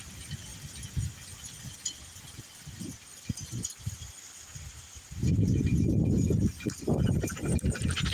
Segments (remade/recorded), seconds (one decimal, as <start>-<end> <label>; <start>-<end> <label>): 0.0-8.1 recorded